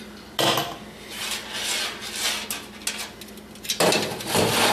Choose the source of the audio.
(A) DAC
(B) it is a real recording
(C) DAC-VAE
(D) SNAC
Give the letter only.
B